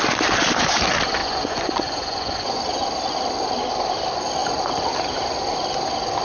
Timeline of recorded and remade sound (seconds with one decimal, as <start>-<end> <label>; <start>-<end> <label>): 0.0-1.2 recorded; 1.2-2.6 remade; 2.6-6.2 recorded